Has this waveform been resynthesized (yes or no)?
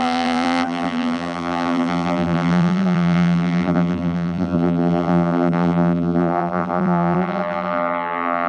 yes